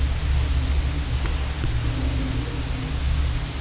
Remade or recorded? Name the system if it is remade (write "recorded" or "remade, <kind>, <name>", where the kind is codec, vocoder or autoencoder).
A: recorded